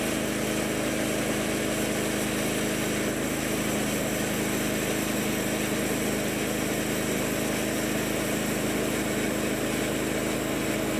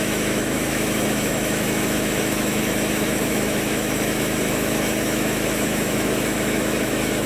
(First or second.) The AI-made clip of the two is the second